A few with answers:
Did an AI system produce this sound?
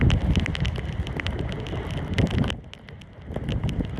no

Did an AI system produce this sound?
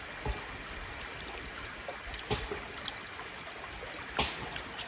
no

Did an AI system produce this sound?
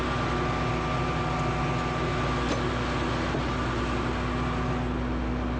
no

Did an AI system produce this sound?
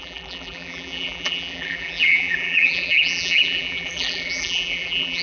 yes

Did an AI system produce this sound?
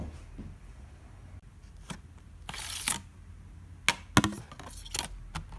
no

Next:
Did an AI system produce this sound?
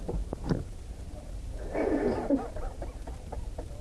yes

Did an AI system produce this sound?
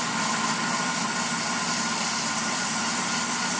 yes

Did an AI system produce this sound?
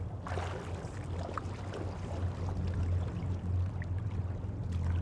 no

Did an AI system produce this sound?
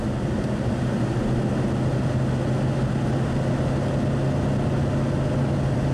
no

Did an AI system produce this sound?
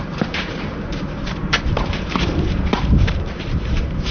yes